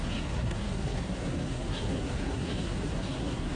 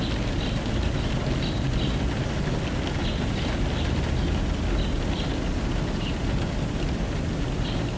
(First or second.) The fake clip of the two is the first